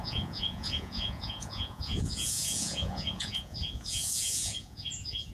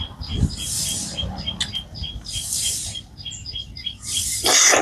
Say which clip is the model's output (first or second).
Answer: first